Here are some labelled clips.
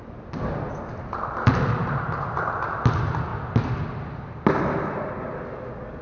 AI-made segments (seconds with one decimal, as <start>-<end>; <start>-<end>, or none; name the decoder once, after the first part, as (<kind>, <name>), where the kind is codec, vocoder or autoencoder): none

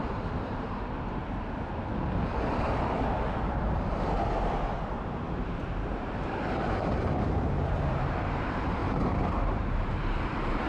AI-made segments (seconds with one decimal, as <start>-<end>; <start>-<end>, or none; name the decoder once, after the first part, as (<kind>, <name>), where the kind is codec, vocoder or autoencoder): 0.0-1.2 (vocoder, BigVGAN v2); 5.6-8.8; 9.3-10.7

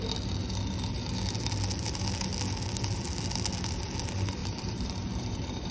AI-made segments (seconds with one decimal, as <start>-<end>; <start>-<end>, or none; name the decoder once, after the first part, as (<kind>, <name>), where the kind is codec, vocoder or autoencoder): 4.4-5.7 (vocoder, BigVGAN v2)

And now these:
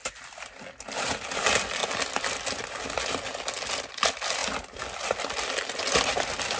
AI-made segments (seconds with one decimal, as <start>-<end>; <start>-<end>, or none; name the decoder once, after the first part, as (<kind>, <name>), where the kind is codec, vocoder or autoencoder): 0.0-1.8 (vocoder, BigVGAN v2); 3.7-4.4; 5.4-6.6

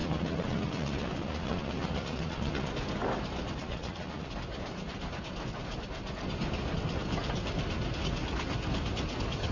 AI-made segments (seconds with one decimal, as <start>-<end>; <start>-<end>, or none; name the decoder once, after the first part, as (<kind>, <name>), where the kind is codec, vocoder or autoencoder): 0.0-2.7 (vocoder, Vocos); 3.6-4.3

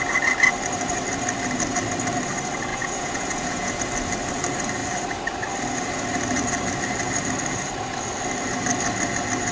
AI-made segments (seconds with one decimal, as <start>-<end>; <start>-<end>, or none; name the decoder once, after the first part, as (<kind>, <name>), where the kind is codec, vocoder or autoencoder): 2.7-3.8 (vocoder, Vocos)